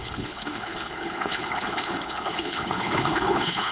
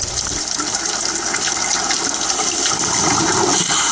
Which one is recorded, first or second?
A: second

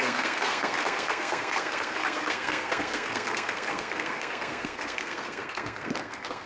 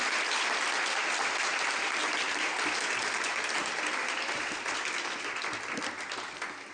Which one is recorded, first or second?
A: second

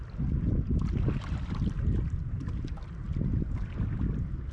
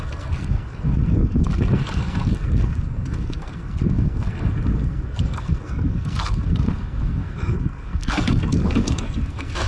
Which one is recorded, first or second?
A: first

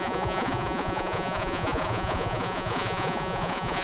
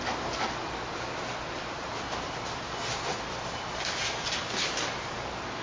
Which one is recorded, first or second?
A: second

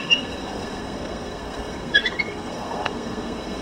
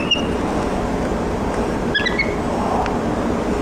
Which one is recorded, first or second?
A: second